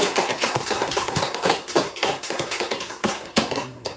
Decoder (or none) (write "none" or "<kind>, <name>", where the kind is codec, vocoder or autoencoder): codec, SNAC